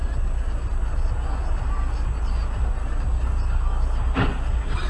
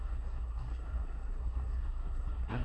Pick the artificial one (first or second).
second